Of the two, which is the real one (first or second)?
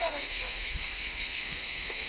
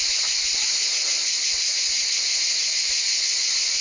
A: second